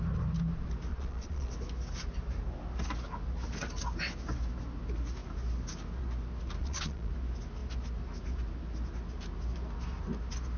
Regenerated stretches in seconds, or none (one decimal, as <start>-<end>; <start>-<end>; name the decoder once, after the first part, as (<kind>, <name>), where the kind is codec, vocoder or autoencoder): 0.9-1.5 (vocoder, Vocos); 6.6-7.1